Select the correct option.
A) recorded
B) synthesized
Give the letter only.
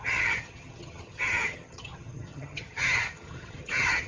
B